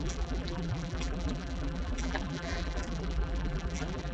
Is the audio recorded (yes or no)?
no